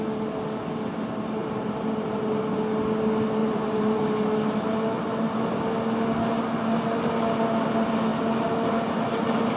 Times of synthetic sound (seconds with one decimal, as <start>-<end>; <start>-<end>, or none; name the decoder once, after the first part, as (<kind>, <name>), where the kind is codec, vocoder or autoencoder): 1.4-2.4 (vocoder, BigVGAN v2); 3.4-4.0